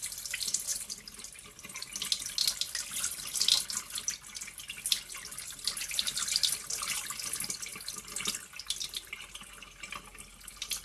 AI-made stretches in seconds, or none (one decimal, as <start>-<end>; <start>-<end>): none